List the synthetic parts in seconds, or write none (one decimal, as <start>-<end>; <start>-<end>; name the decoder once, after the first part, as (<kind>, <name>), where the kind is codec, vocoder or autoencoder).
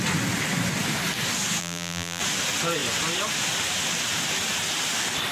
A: 1.6-2.2 (vocoder, BigVGAN v2)